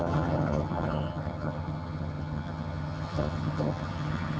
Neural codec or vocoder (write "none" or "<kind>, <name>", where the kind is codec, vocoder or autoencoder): vocoder, HiFi-GAN